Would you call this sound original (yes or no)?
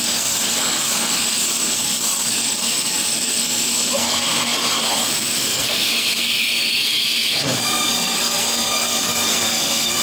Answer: no